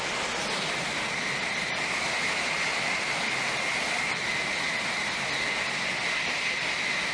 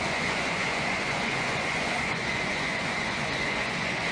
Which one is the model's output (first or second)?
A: second